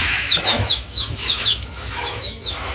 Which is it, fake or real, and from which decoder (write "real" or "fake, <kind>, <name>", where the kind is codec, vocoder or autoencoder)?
fake, autoencoder, DAC-VAE